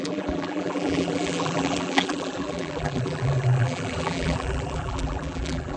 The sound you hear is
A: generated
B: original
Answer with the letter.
A